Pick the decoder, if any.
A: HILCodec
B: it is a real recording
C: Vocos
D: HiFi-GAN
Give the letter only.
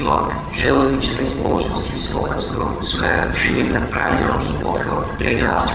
D